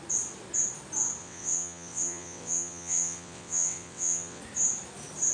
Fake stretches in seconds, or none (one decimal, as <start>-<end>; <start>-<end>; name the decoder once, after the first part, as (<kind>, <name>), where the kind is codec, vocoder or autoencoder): 1.2-4.4 (vocoder, WaveNeXt)